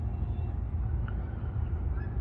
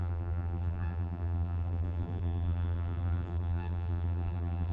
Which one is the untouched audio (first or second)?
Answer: first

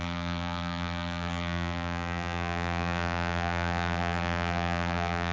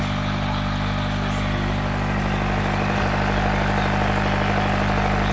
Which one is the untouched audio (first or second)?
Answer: second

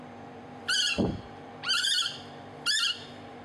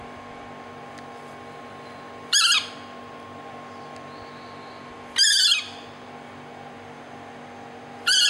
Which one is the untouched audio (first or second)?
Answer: second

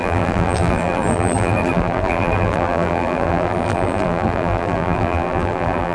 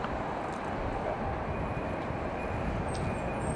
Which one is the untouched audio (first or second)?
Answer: second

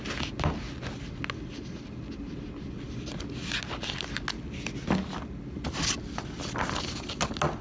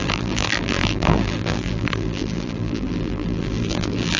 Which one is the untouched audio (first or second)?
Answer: first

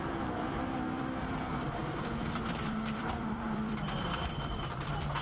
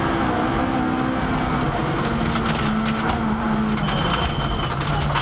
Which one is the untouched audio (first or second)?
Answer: second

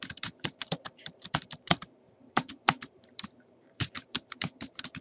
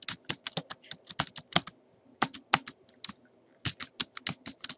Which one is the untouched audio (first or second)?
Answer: second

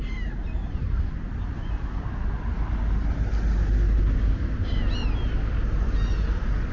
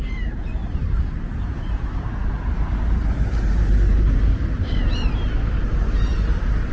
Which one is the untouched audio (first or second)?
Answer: first